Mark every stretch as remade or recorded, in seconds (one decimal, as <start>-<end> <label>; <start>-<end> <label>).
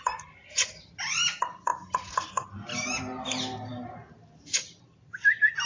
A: 0.0-1.7 remade; 1.7-2.3 recorded; 2.3-5.7 remade